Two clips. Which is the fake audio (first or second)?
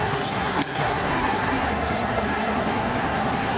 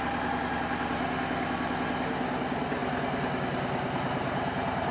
first